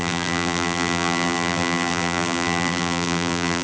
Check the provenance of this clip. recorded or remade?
remade